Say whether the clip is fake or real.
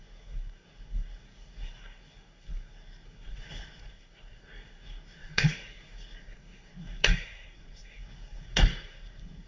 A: fake